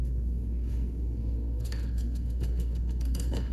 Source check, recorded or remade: remade